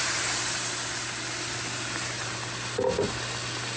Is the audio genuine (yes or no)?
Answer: yes